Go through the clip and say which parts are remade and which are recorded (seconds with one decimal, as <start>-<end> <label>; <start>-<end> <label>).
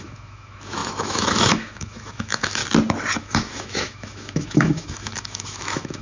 0.0-2.6 remade; 2.6-3.2 recorded; 3.2-6.0 remade